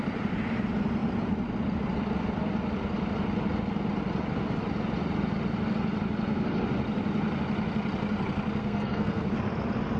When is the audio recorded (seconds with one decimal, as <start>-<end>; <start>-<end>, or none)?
0.0-8.6; 9.3-10.0